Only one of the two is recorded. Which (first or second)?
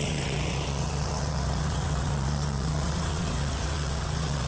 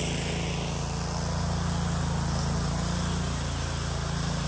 second